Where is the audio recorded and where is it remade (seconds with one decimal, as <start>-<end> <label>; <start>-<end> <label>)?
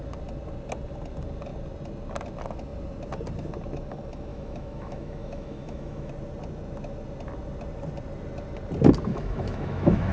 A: 0.0-4.3 recorded; 4.3-6.1 remade; 6.1-9.1 recorded; 9.1-10.1 remade